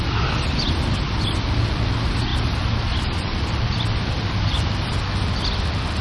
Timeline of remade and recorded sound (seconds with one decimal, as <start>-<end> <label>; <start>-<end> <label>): 0.0-6.0 recorded